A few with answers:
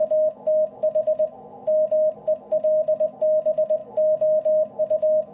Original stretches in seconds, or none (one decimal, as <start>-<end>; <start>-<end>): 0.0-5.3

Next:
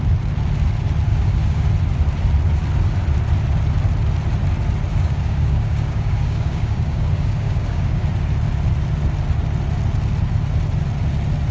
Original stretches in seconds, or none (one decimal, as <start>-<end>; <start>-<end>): 0.0-1.1; 1.7-4.9; 8.0-11.5

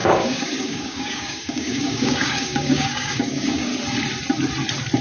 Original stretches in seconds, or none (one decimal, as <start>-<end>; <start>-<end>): 3.7-5.0

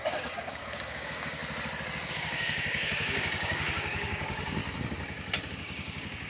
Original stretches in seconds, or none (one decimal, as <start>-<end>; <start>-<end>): 1.4-2.1; 4.6-5.5

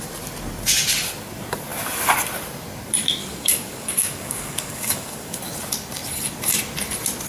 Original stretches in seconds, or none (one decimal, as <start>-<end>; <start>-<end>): 0.0-3.2; 5.4-7.3

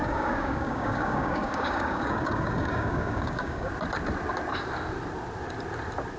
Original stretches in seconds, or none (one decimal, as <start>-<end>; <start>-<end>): 3.7-6.2

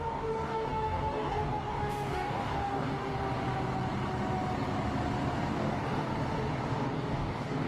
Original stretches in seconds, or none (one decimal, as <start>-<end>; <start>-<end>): 3.1-5.5; 6.1-6.7

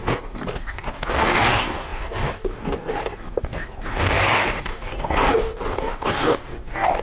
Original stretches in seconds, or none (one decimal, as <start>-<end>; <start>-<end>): none